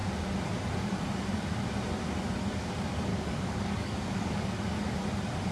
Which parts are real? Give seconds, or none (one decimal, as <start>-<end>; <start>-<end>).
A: 0.0-3.1; 4.5-5.5